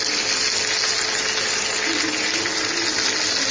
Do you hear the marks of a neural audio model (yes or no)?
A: no